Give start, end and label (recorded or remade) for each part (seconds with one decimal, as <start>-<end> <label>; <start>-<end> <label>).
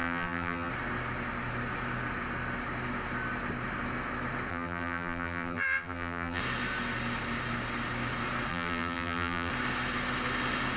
0.0-0.7 remade; 0.7-4.5 recorded; 4.5-6.4 remade; 6.4-8.5 recorded; 8.5-9.5 remade; 9.5-10.8 recorded